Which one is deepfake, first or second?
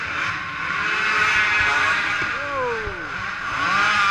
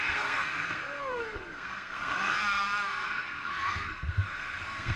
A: second